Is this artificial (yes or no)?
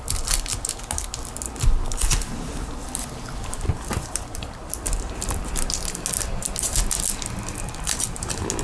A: no